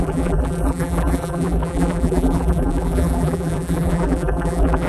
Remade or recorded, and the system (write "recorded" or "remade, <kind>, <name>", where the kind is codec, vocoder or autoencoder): remade, vocoder, BigVGAN v2